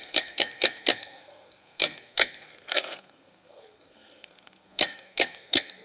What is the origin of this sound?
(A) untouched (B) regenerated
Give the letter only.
B